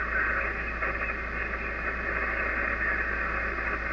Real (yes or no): yes